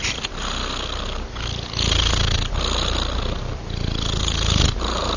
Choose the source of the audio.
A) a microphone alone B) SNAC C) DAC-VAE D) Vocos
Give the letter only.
A